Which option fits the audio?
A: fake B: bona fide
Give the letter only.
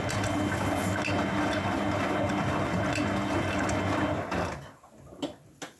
B